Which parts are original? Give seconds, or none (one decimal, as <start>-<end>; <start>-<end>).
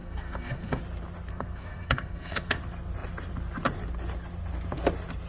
0.8-1.3; 2.6-5.3